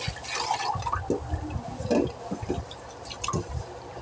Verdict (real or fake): real